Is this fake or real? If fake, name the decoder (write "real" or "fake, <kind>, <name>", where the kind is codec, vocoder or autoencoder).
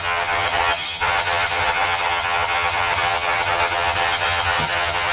fake, vocoder, HiFi-GAN